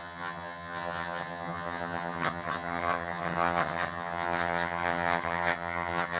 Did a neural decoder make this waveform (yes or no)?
yes